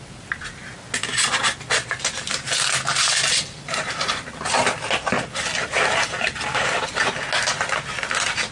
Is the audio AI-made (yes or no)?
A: no